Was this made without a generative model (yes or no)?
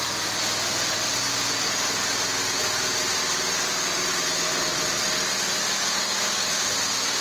yes